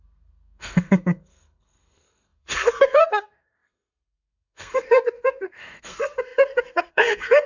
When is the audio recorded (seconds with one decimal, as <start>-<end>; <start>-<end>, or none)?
none